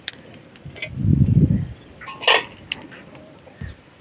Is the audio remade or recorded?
recorded